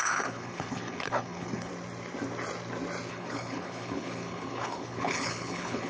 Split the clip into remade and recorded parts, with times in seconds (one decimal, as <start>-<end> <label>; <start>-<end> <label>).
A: 0.0-1.7 remade; 1.7-3.1 recorded; 3.1-5.9 remade